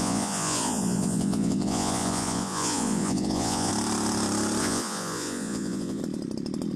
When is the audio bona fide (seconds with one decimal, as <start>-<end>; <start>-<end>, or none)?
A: 3.7-4.6; 6.0-6.8

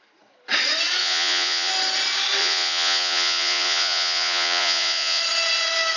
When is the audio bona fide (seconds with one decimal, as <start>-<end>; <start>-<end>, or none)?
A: 0.0-1.0; 1.7-2.4; 5.2-6.0

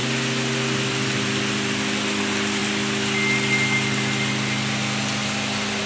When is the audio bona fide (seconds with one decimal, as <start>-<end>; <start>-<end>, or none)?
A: 0.0-5.9

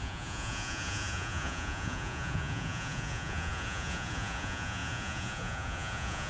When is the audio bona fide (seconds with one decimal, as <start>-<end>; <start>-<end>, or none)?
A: none